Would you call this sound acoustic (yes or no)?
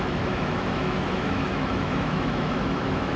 no